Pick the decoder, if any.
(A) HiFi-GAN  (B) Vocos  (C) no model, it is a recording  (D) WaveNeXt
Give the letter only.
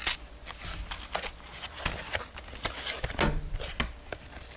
C